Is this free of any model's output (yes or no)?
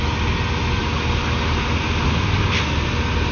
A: yes